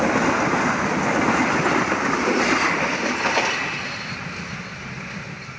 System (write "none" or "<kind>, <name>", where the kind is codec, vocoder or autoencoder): none